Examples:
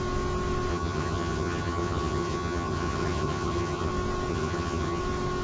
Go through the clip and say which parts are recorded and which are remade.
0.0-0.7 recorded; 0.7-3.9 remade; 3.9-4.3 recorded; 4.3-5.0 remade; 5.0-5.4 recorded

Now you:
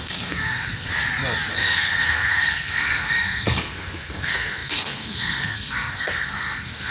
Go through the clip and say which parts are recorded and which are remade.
0.0-0.9 remade; 0.9-1.5 recorded; 1.5-6.9 remade

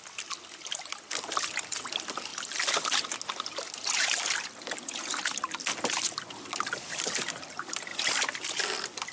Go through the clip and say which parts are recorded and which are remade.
0.0-2.3 remade; 2.3-7.5 recorded; 7.5-7.9 remade; 7.9-9.1 recorded

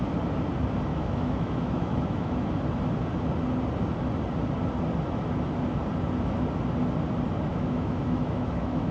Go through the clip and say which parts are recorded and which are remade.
0.0-0.9 recorded; 0.9-2.5 remade; 2.5-7.5 recorded; 7.5-8.9 remade